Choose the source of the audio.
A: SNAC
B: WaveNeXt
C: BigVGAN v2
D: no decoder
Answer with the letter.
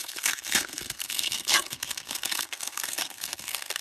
A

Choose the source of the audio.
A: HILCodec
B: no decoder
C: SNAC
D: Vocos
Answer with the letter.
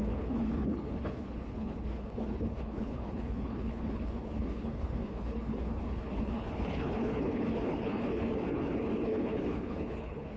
A